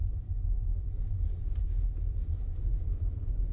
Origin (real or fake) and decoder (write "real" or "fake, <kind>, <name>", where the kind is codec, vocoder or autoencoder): real